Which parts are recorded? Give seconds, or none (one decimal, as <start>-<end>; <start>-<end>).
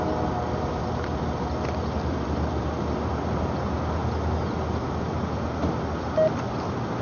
0.0-7.0